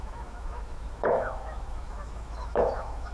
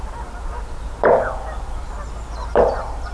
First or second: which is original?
second